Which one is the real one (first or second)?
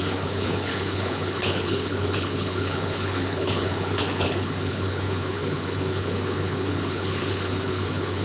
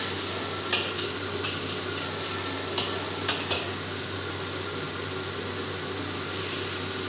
second